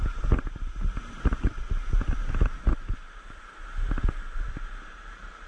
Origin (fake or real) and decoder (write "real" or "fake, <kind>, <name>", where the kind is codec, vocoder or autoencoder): real